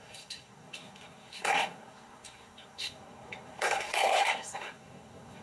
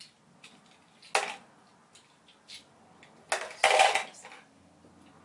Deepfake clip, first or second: first